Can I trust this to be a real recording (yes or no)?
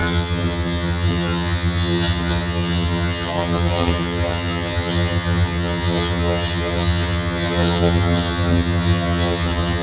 no